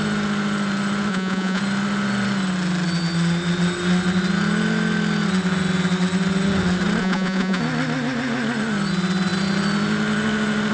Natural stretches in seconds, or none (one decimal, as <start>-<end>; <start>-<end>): 0.0-1.1; 1.6-7.0; 7.6-10.7